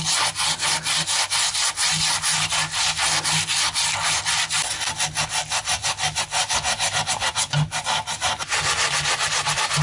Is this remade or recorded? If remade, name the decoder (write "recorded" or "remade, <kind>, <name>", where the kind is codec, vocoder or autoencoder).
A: recorded